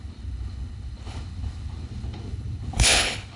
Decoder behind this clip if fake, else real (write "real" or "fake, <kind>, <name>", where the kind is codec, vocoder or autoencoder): fake, codec, HILCodec